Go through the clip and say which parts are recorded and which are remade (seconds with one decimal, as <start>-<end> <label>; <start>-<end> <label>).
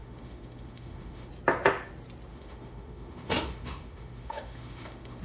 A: 0.0-1.3 remade; 1.3-2.3 recorded; 2.3-5.2 remade